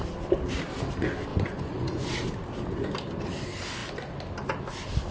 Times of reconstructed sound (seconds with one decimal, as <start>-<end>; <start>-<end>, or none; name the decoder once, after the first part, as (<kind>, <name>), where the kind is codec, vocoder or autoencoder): 1.3-2.1 (vocoder, Vocos)